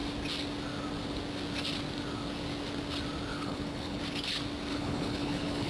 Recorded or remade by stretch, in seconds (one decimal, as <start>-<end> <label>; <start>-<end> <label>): 0.0-3.3 recorded; 3.3-4.0 remade; 4.0-4.7 recorded; 4.7-5.7 remade